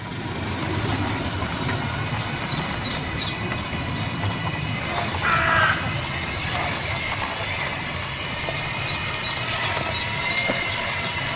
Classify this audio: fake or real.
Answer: real